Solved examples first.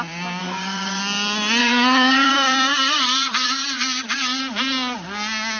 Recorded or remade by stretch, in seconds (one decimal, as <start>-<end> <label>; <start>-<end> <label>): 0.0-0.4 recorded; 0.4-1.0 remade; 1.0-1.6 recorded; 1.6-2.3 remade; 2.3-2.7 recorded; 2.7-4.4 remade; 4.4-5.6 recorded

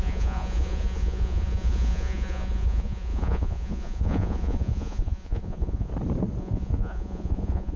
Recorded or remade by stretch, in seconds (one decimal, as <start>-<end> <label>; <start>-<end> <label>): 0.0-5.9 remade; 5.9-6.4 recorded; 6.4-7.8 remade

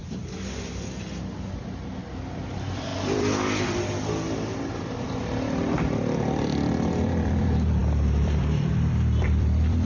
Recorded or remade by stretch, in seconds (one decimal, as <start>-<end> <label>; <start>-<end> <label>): 0.0-2.4 recorded; 2.4-9.8 remade

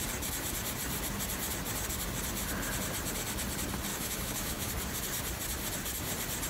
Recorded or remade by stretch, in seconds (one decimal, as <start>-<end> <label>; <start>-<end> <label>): 0.0-3.9 recorded; 3.9-4.7 remade; 4.7-6.5 recorded

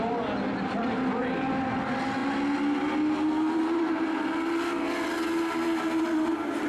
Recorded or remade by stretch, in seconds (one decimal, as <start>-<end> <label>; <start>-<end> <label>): 0.0-6.7 recorded